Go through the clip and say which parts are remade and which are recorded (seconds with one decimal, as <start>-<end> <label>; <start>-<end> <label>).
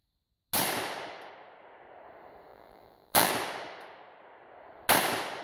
0.0-2.5 recorded; 2.5-3.3 remade; 3.3-5.4 recorded